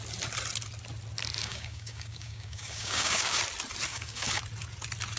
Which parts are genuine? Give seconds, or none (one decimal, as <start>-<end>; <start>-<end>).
0.0-1.4; 3.4-3.9; 4.4-5.2